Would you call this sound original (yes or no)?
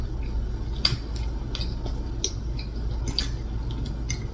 yes